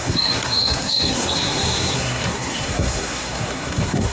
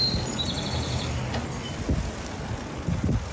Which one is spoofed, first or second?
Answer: first